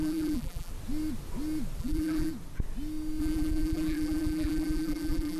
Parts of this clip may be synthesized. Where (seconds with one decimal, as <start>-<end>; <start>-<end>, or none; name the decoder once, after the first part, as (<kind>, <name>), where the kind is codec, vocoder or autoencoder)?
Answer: 0.0-0.7 (vocoder, BigVGAN v2); 1.8-2.3; 3.2-5.4

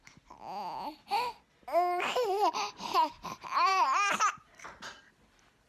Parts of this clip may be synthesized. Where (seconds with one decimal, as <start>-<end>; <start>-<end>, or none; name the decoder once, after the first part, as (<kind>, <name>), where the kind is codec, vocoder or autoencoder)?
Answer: 3.7-5.1 (vocoder, BigVGAN v2)

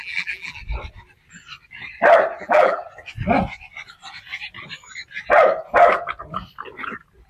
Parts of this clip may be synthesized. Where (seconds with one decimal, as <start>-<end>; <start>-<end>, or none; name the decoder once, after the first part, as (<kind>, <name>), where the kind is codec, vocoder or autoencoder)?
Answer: 0.0-0.6 (vocoder, BigVGAN v2); 2.4-2.8

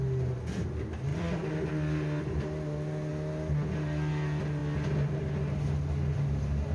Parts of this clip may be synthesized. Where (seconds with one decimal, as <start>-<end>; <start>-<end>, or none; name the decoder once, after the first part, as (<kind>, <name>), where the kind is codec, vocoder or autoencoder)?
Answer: 1.1-1.7 (vocoder, BigVGAN v2)